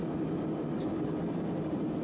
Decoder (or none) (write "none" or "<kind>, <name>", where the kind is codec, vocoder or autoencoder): none